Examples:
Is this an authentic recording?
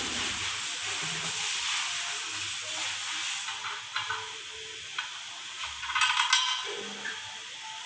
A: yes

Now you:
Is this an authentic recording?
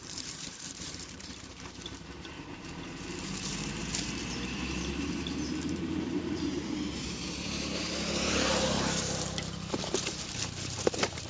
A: no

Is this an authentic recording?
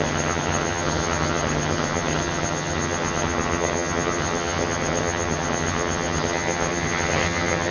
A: no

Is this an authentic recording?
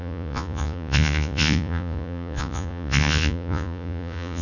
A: no